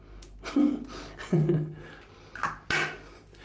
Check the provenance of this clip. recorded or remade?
recorded